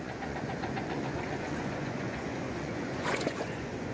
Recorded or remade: remade